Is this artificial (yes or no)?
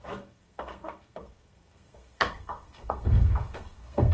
yes